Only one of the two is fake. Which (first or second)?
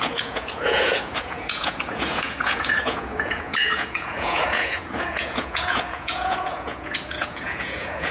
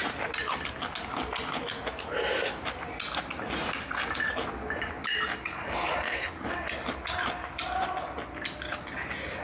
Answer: first